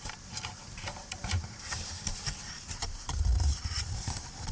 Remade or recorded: remade